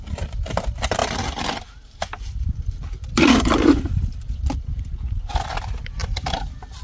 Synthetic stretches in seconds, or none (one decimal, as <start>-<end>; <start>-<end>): 1.0-4.9; 6.0-6.8